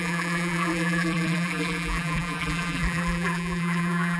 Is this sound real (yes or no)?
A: no